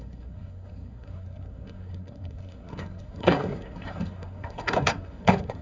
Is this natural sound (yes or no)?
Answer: no